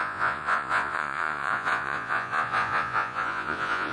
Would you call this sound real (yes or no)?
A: no